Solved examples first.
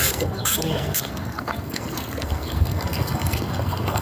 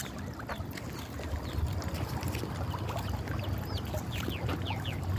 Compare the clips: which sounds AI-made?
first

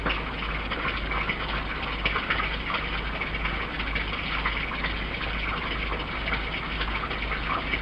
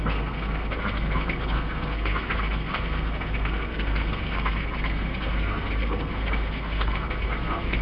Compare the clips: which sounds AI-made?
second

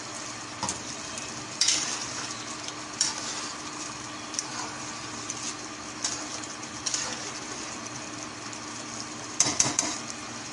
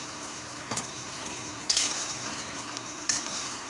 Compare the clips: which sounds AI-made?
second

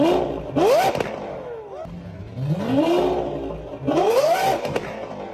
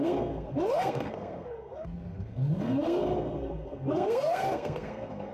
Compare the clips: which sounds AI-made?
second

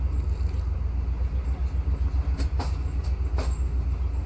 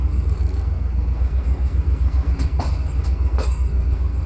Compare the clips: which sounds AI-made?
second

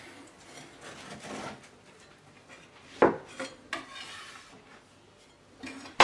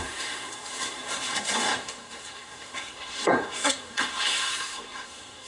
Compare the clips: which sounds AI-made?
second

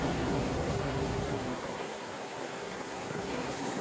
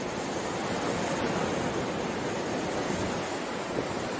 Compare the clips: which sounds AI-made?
first